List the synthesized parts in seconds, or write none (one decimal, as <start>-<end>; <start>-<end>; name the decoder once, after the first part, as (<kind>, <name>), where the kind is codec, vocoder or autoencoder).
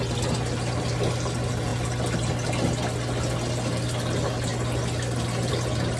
none